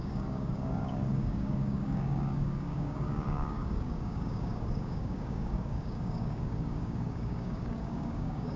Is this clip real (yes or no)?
no